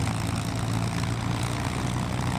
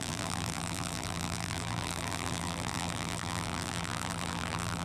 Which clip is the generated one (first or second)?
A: second